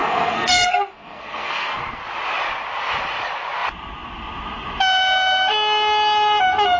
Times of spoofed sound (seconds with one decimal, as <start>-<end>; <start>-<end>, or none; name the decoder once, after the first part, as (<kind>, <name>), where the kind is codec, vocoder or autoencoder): 0.0-2.0 (codec, SNAC)